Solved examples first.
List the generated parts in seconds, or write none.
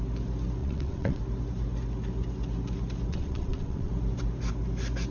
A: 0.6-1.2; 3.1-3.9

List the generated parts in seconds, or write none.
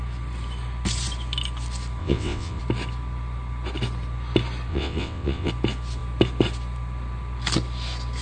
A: 2.0-2.6; 4.7-5.5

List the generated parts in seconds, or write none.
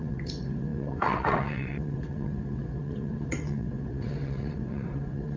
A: 0.0-5.4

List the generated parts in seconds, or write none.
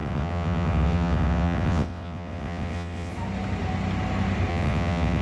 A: 0.0-3.1; 4.5-5.2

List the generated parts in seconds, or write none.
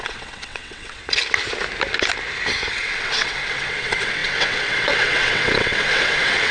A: 0.0-1.0; 2.7-6.5